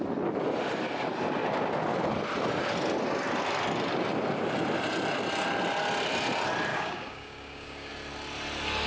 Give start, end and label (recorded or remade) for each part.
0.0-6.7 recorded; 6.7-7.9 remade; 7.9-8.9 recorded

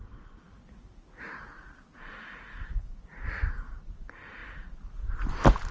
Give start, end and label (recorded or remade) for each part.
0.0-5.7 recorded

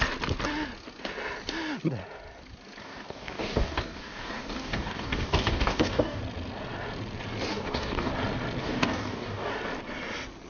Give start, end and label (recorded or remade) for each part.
0.0-2.8 recorded; 2.8-6.2 remade; 6.2-7.5 recorded; 7.5-8.1 remade; 8.1-8.6 recorded; 8.6-9.5 remade; 9.5-10.5 recorded